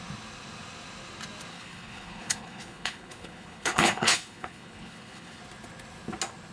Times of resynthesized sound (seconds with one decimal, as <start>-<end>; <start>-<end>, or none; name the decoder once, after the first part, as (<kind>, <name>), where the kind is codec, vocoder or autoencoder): 1.5-5.4 (codec, HILCodec)